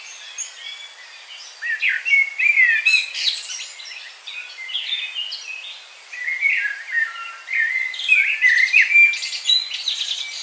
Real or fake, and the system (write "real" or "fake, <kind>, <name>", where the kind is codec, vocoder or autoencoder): real